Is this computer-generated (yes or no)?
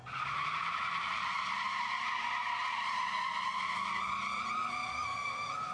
no